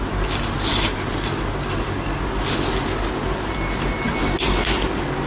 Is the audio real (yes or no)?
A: yes